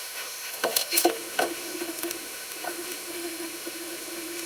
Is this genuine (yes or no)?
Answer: no